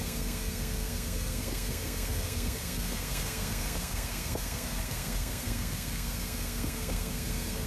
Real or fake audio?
fake